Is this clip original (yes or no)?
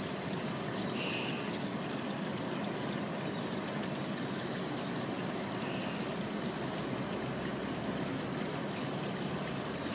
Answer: yes